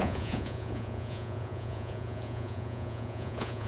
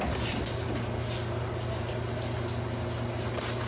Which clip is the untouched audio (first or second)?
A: second